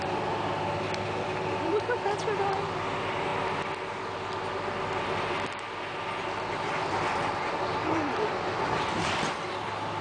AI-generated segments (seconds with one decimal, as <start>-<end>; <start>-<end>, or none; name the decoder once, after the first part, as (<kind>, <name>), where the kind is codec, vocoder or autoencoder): none